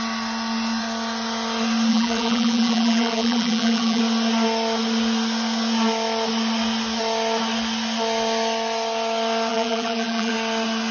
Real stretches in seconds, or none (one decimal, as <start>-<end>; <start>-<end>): 0.0-1.9; 4.0-9.5; 10.3-10.9